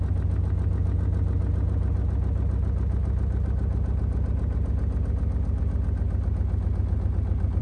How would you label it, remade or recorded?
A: recorded